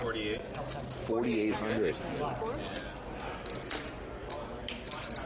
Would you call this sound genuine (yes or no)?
yes